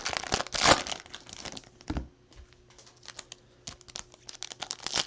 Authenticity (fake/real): real